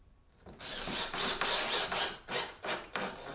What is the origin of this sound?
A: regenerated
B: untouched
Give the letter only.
B